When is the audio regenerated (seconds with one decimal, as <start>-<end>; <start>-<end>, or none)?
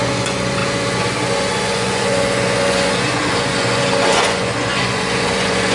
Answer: 0.0-5.7